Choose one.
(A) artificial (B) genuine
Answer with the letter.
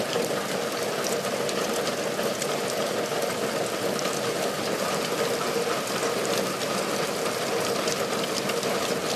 B